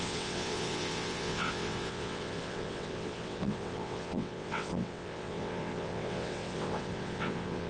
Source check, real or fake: fake